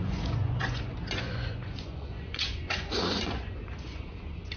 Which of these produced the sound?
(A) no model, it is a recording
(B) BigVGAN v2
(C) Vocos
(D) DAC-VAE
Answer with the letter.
C